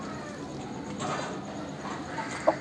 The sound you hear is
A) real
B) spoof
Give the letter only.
A